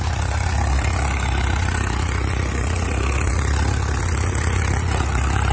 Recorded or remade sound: remade